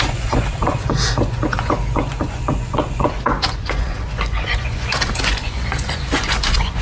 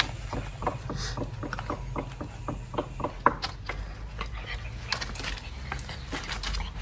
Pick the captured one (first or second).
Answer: second